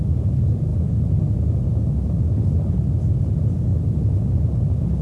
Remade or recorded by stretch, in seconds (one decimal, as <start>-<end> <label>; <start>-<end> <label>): 0.0-5.0 recorded